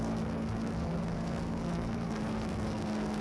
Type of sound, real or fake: fake